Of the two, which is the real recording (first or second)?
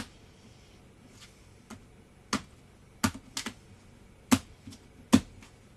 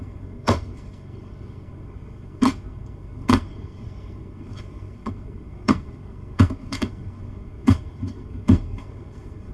first